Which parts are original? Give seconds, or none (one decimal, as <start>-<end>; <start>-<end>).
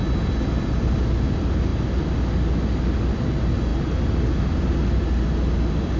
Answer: 0.0-6.0